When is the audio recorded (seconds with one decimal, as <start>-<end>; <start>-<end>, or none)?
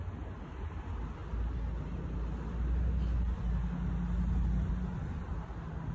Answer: 0.0-5.9